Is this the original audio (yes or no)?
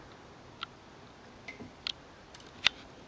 yes